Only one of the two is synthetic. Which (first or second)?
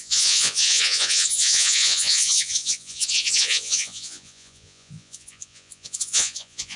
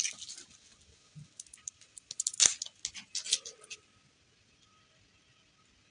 first